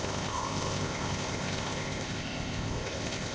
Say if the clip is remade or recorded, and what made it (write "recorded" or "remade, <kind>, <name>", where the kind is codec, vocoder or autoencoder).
remade, codec, ZipCodec